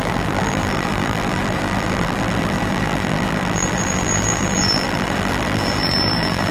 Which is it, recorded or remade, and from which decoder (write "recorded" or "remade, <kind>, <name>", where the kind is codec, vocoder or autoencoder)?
remade, vocoder, BigVGAN v2